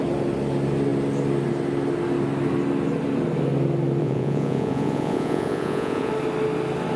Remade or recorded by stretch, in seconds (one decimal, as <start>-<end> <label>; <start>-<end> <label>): 0.0-4.0 recorded; 4.0-6.1 remade; 6.1-7.0 recorded